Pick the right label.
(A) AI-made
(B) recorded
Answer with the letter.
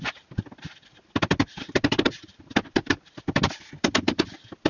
A